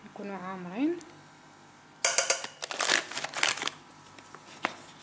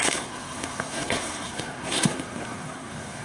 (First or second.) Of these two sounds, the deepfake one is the second